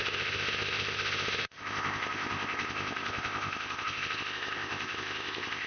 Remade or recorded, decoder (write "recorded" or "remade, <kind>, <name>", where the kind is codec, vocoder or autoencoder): remade, codec, ZipCodec